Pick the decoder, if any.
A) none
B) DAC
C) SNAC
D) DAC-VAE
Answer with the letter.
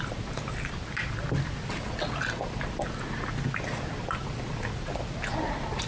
A